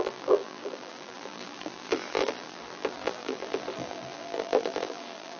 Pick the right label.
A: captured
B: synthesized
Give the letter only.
B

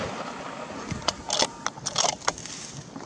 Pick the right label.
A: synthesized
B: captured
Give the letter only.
B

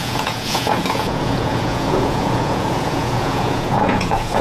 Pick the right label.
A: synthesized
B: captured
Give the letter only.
A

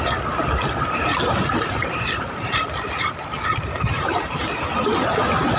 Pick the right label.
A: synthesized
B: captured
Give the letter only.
B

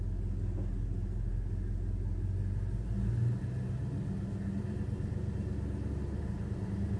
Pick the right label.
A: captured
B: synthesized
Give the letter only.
A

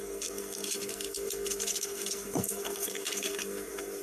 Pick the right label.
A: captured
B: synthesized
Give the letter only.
B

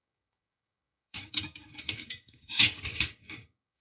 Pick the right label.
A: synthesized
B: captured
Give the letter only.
A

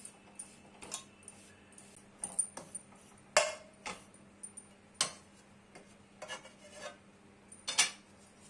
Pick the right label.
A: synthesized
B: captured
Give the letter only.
B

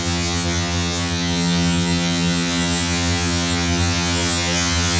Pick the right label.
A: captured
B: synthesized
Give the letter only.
B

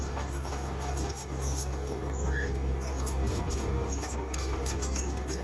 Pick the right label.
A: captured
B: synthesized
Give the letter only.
B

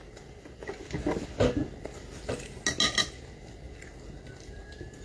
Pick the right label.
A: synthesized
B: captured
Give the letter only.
B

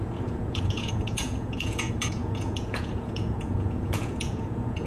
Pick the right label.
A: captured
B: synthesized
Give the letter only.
B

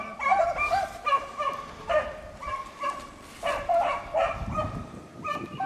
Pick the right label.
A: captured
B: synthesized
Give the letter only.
B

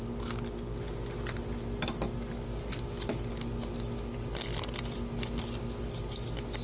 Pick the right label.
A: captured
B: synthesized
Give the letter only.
A